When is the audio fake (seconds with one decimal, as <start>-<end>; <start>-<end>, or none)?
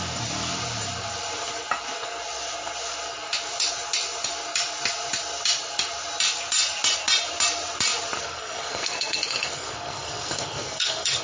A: 8.2-11.2